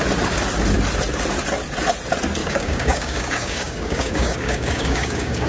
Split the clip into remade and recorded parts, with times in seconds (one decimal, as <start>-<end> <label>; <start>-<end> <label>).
0.0-2.4 recorded; 2.4-5.5 remade